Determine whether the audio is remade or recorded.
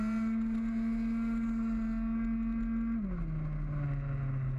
recorded